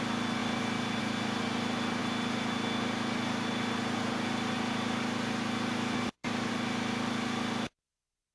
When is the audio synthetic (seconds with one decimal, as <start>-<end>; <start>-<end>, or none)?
none